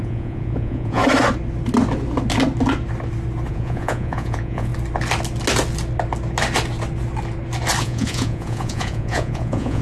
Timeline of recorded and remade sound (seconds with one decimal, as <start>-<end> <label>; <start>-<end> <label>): 0.0-1.0 remade; 1.0-3.5 recorded; 3.5-4.7 remade; 4.7-7.8 recorded; 7.8-9.8 remade

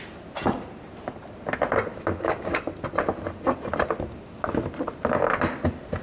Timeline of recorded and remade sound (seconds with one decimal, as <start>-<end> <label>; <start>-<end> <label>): 0.0-1.9 recorded; 1.9-2.6 remade; 2.6-6.0 recorded

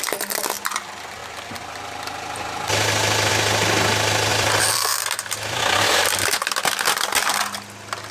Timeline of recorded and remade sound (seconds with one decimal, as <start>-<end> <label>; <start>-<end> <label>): 0.0-4.3 recorded; 4.3-5.6 remade; 5.6-8.1 recorded

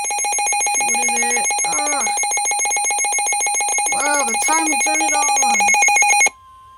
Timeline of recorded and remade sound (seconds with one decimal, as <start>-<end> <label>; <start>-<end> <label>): 0.0-3.7 recorded; 3.7-4.5 remade; 4.5-5.5 recorded; 5.5-6.1 remade; 6.1-6.8 recorded

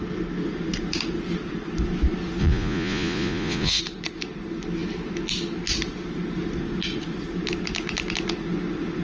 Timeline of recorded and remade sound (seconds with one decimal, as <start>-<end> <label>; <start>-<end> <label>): 0.0-2.4 recorded; 2.4-3.8 remade; 3.8-9.0 recorded

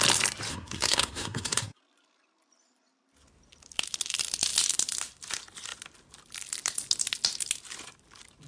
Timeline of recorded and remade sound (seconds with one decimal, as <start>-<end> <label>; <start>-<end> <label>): 0.0-0.5 recorded; 0.5-1.8 remade; 1.8-8.5 recorded

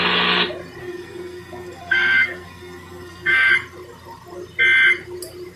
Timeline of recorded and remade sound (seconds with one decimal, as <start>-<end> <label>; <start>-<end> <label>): 0.0-0.8 recorded; 0.8-3.5 remade; 3.5-5.6 recorded

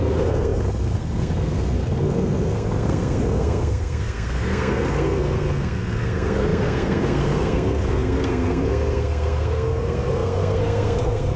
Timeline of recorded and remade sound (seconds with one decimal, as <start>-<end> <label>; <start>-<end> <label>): 0.0-11.4 remade